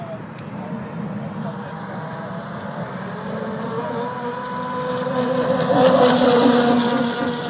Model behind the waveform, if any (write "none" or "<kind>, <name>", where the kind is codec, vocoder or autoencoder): none